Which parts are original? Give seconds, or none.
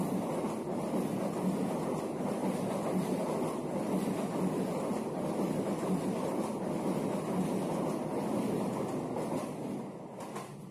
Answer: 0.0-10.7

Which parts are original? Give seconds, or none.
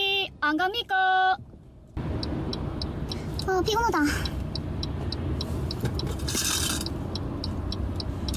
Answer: 0.0-8.4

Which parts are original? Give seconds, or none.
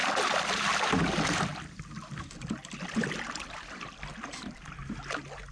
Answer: 0.7-1.5; 4.8-5.5